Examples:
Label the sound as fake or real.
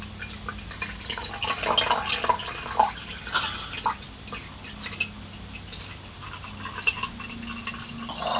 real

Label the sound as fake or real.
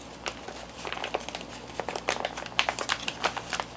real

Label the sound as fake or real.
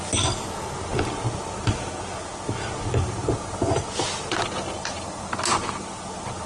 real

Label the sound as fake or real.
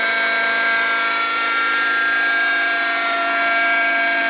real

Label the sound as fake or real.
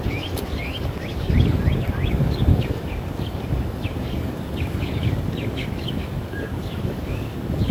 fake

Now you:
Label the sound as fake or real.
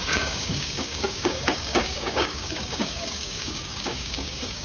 fake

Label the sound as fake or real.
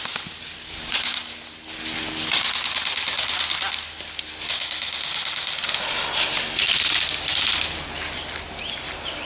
real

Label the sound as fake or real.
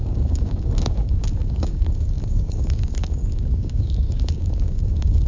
fake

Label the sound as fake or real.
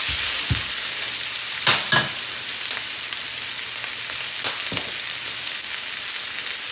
real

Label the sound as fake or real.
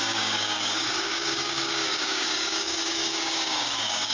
fake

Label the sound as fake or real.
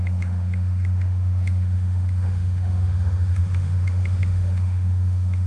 fake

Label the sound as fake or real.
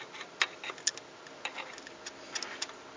real